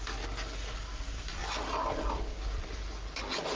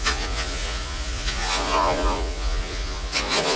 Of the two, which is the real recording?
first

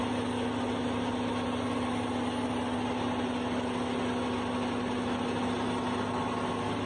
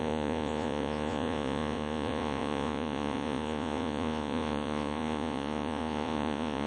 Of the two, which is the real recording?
first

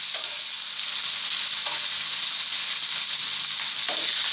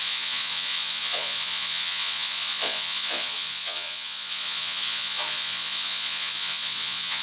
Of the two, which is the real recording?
first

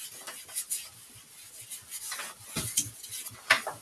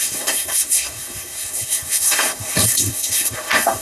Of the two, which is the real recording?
first